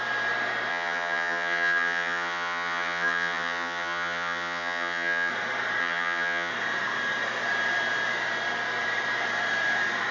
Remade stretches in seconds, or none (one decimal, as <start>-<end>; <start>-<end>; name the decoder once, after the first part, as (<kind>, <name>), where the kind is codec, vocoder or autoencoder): 0.7-5.3 (vocoder, HiFi-GAN); 5.8-6.5